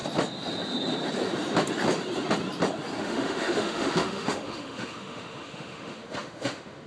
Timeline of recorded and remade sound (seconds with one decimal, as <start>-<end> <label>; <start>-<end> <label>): 0.0-3.0 recorded; 3.0-6.9 remade